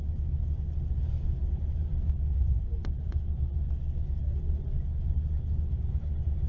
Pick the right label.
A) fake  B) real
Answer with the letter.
B